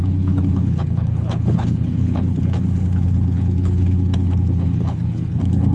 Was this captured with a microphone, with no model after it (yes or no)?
no